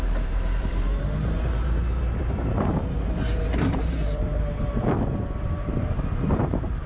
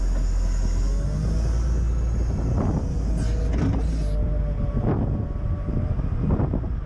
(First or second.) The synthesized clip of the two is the first